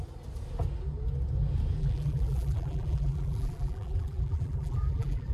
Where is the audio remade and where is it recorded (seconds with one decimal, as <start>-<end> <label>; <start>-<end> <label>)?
0.0-1.8 recorded; 1.8-5.3 remade